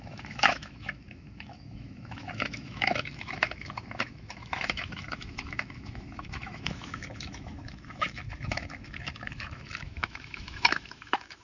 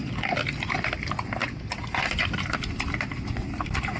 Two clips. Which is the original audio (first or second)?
second